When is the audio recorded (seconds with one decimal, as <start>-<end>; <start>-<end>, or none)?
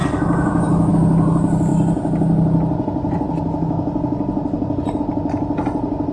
0.0-6.1